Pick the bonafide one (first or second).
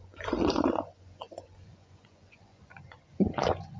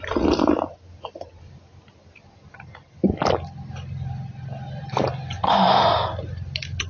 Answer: second